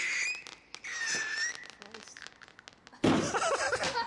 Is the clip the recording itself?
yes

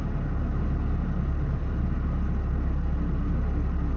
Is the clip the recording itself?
yes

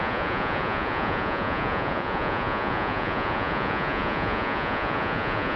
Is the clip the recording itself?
no